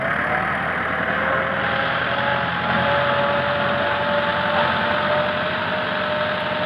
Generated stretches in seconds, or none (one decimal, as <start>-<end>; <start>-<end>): none